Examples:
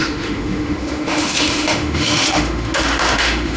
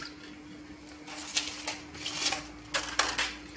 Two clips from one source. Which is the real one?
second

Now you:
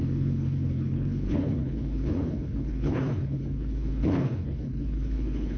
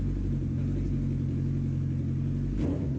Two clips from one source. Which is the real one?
second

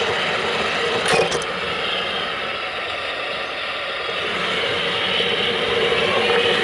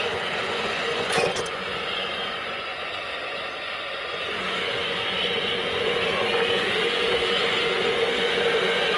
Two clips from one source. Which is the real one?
first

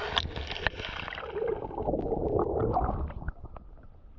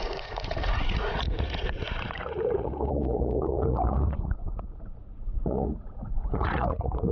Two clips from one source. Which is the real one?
first